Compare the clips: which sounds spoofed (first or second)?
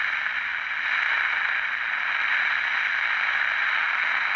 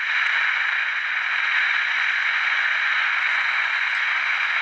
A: second